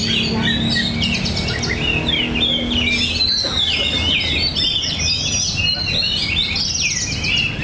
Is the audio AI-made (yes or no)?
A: no